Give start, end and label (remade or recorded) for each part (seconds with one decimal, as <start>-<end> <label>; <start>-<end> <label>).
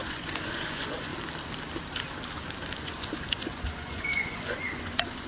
0.0-1.1 remade; 1.1-2.8 recorded; 2.8-5.3 remade